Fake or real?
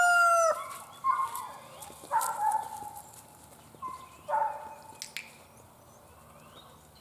real